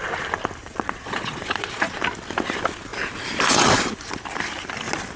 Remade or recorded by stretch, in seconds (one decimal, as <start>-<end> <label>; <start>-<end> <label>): 0.0-0.7 recorded; 0.7-2.0 remade; 2.0-5.2 recorded

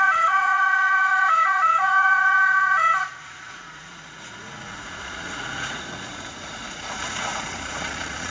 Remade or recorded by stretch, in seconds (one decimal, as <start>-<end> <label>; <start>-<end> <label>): 0.0-8.3 remade

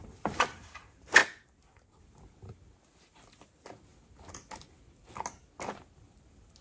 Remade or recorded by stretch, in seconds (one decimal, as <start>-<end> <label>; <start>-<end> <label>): 0.0-6.6 recorded

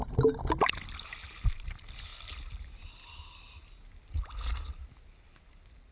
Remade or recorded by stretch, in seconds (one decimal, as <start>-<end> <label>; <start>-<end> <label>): 0.0-5.9 recorded